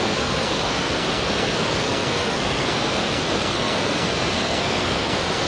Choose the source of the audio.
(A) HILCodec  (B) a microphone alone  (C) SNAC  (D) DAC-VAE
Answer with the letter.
C